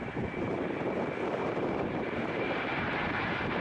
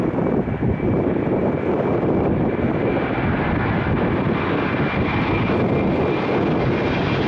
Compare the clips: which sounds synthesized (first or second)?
first